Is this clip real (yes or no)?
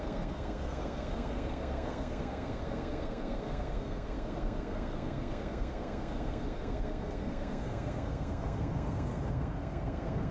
no